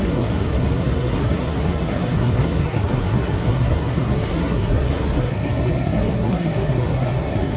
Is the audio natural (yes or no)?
no